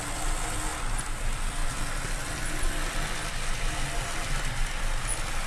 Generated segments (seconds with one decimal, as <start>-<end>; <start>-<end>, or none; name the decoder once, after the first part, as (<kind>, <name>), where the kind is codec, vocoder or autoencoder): none